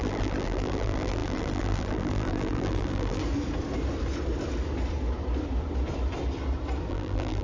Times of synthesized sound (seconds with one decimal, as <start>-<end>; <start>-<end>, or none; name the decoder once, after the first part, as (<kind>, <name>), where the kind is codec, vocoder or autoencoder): 0.0-3.2 (vocoder, BigVGAN v2); 6.9-7.4